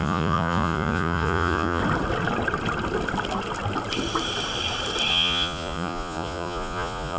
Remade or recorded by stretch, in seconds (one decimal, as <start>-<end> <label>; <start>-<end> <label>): 0.0-1.8 remade; 1.8-5.1 recorded; 5.1-7.2 remade